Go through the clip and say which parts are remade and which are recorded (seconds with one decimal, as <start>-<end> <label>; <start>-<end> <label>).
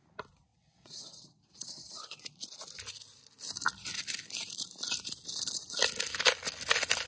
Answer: 0.0-0.5 recorded; 0.5-2.2 remade; 2.2-7.1 recorded